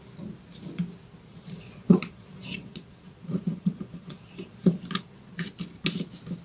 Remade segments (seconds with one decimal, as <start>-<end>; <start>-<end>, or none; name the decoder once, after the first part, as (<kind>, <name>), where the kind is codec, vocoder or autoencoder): 1.3-4.8 (vocoder, Vocos)